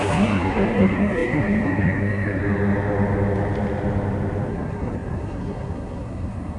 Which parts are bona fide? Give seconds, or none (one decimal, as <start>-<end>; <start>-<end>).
2.4-4.5